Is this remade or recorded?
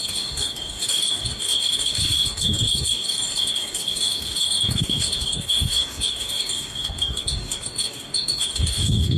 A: remade